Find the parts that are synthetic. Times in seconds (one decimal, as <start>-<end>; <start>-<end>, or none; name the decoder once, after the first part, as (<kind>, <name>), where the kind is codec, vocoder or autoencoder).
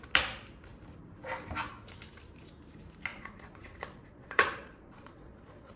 3.1-5.8 (vocoder, Vocos)